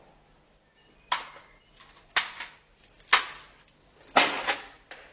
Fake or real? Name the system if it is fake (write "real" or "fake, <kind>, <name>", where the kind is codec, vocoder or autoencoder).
real